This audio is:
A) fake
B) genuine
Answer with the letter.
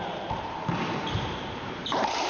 A